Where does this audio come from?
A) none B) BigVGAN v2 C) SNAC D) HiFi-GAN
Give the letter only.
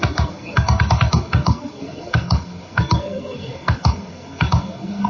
C